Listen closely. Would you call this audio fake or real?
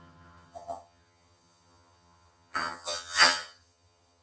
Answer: fake